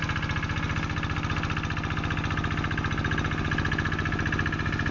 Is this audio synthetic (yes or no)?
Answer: no